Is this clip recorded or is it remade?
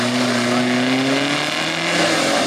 recorded